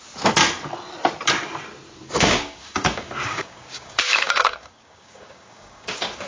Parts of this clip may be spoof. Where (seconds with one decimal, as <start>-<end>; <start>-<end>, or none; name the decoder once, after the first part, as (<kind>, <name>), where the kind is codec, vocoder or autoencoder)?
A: 2.1-6.3 (codec, DAC)